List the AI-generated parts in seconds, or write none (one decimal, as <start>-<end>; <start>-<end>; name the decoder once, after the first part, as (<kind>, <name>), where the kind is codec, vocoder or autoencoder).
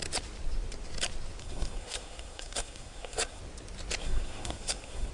1.4-3.4 (codec, SNAC); 4.0-5.1